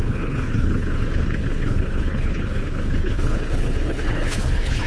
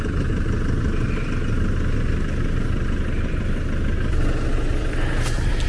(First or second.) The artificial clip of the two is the first